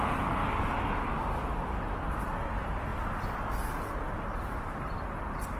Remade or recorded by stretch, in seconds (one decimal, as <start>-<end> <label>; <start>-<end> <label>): 0.0-0.4 remade; 0.4-1.2 recorded; 1.2-2.9 remade; 2.9-4.4 recorded; 4.4-5.6 remade